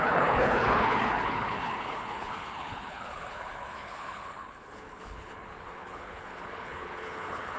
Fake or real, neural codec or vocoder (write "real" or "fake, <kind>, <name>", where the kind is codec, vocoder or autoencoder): fake, codec, HILCodec